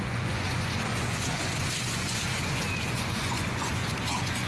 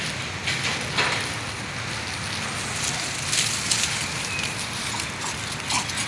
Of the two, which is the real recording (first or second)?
second